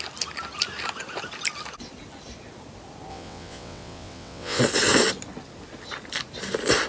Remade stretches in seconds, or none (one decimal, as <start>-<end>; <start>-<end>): 3.1-4.6